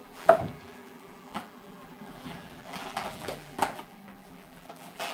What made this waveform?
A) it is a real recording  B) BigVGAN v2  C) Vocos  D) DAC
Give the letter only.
B